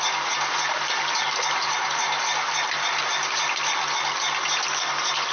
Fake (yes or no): no